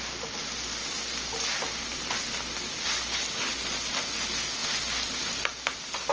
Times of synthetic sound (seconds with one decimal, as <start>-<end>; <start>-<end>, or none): none